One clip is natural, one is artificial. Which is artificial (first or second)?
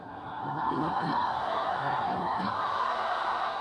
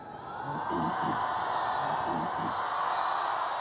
first